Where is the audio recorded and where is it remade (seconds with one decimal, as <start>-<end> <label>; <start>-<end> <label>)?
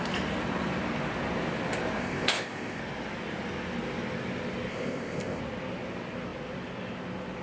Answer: 0.0-2.0 recorded; 2.0-2.8 remade; 2.8-4.7 recorded; 4.7-5.4 remade; 5.4-7.4 recorded